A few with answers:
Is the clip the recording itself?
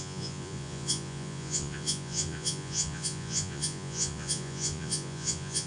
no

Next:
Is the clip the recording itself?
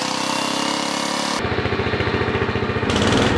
yes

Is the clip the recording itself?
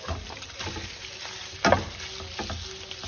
yes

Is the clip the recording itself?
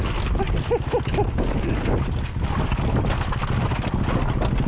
yes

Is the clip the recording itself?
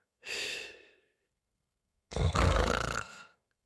no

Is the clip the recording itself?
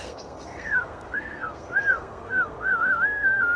no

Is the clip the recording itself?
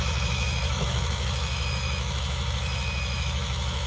no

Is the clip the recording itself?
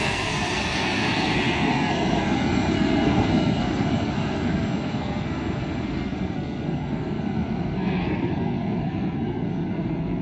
no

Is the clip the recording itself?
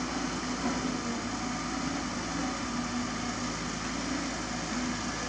yes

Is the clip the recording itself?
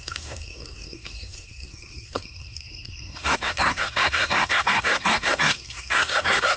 no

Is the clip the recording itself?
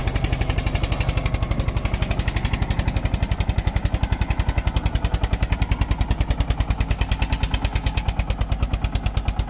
yes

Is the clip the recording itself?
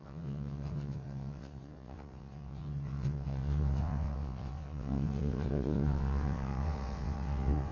no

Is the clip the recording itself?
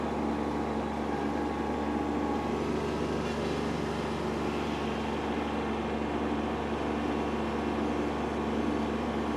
yes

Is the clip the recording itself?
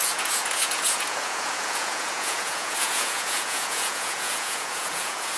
no